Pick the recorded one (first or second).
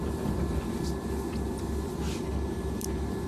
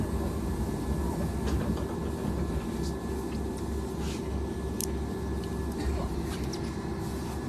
second